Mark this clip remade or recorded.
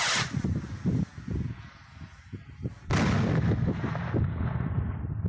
recorded